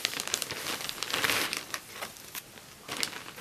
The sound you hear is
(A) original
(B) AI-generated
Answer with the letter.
A